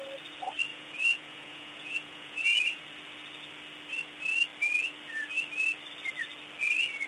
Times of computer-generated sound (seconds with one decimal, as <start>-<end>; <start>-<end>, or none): 0.7-2.8